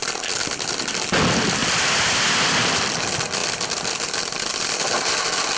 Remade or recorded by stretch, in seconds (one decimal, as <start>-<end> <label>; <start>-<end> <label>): 0.0-5.6 recorded